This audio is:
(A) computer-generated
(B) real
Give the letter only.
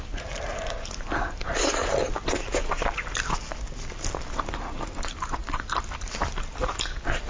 B